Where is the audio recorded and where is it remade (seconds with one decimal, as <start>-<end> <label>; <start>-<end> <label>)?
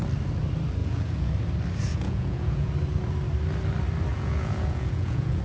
0.0-0.8 recorded; 0.8-1.3 remade; 1.3-1.9 recorded; 1.9-2.7 remade; 2.7-4.1 recorded; 4.1-5.4 remade